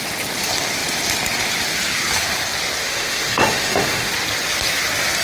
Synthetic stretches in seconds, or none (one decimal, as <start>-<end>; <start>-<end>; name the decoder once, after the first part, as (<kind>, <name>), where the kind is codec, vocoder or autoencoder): 2.8-4.1 (autoencoder, DAC-VAE)